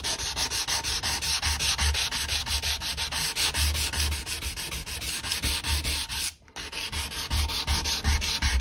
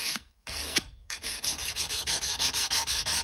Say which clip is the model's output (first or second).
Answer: second